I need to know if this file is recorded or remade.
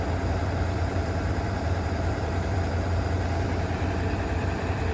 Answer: remade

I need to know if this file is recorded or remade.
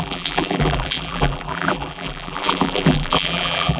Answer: remade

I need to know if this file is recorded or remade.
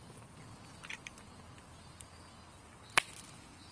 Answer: recorded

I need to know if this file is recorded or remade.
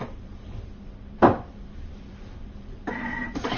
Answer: remade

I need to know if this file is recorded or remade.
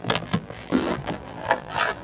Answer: remade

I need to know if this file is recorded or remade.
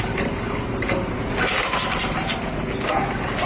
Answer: recorded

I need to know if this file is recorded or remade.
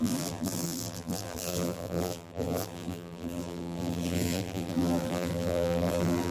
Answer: remade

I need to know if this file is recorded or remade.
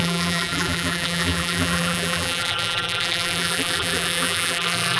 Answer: remade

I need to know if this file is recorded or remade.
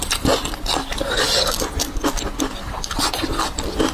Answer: remade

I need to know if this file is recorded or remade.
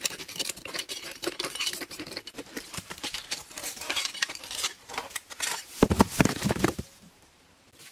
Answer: remade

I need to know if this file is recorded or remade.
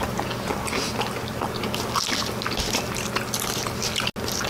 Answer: recorded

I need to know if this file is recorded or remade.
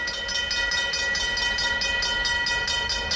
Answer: recorded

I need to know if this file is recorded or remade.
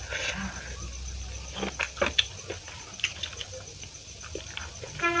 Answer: recorded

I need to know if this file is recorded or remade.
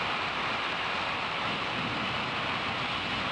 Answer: recorded